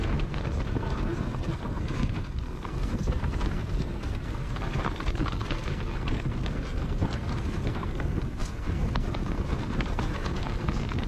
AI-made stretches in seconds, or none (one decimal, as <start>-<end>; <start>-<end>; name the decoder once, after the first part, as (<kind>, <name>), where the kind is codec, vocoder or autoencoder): 0.0-11.1 (codec, SNAC)